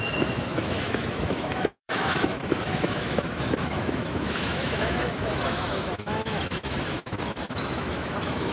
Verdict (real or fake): fake